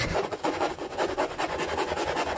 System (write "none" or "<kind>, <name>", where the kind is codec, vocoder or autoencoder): vocoder, Vocos